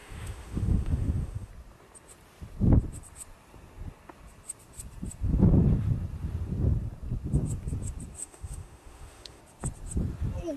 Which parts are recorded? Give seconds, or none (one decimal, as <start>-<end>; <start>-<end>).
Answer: 1.5-8.2; 9.4-10.6